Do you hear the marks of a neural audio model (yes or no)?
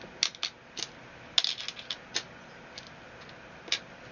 no